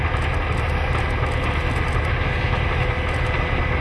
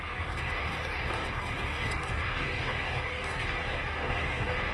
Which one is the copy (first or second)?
second